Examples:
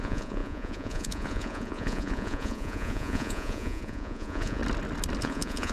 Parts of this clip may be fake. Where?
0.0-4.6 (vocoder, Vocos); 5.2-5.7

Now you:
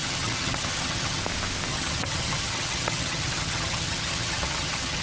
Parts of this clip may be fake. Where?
0.0-1.2 (vocoder, HiFi-GAN); 1.7-5.0

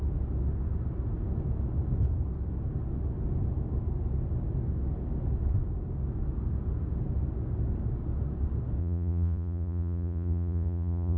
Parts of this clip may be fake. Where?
8.8-11.2 (vocoder, Vocos)

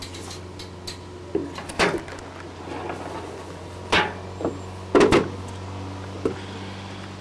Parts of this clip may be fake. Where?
none